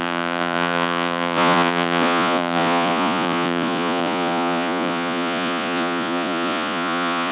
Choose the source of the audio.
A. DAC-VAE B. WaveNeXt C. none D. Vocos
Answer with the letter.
D